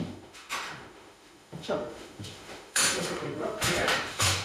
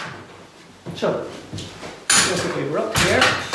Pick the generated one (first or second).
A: first